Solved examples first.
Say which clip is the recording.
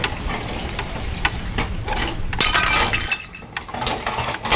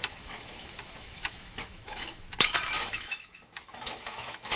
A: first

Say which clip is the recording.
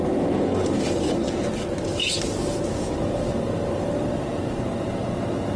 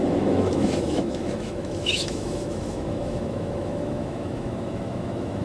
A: first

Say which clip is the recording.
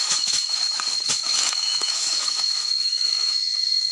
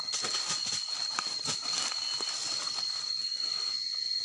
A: second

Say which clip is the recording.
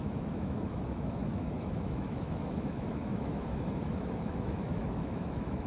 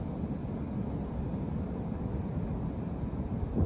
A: second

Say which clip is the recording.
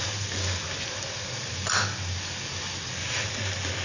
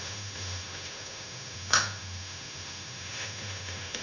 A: first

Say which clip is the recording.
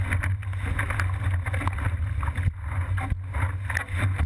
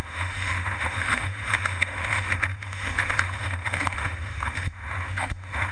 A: first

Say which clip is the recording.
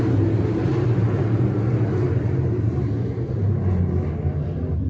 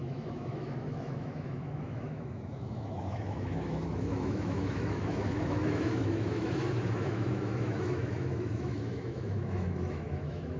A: first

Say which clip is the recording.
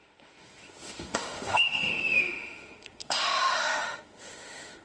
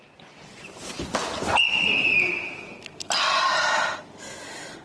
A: second